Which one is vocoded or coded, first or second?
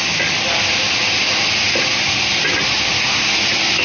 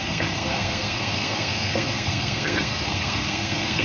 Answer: second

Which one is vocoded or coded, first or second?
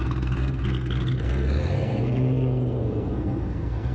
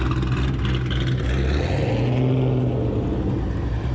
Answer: first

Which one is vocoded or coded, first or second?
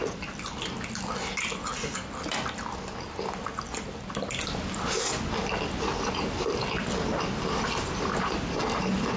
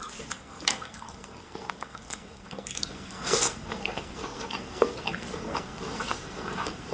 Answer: second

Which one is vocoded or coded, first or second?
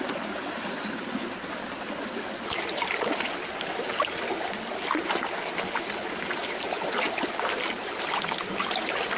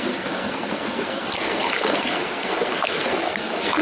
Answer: second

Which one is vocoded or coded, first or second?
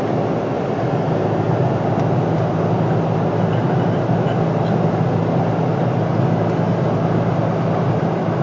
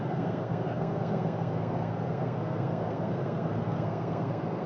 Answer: second